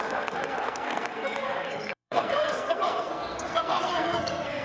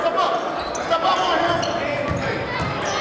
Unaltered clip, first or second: second